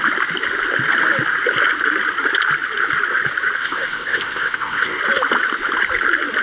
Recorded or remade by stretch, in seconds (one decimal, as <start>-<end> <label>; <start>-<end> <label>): 0.0-3.6 recorded; 3.6-5.0 remade; 5.0-6.4 recorded